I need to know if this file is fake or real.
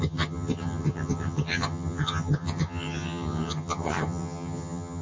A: fake